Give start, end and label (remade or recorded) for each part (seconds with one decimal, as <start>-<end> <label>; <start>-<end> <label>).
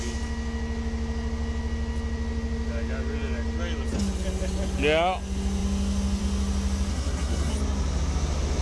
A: 0.0-6.9 recorded; 6.9-7.5 remade; 7.5-8.6 recorded